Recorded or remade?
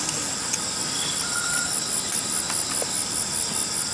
recorded